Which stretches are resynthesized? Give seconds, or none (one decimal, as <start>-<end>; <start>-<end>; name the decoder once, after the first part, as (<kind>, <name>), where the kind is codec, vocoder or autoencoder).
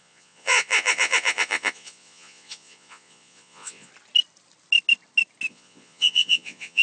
0.0-3.9 (vocoder, Vocos); 5.5-6.8